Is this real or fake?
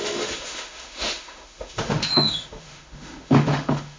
fake